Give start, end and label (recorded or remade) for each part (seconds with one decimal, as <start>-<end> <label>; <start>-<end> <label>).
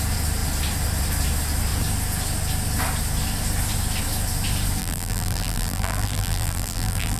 0.0-4.8 recorded; 4.8-7.2 remade